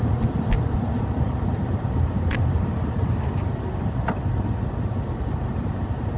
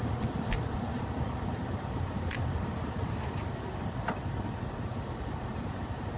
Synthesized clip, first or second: second